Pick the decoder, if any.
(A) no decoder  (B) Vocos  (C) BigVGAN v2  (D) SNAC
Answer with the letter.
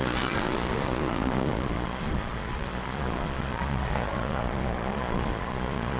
B